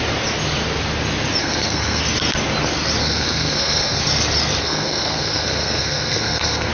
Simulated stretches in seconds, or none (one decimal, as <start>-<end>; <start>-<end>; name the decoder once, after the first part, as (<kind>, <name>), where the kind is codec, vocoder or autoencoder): 1.4-2.0 (codec, SNAC); 3.0-4.0; 4.6-6.7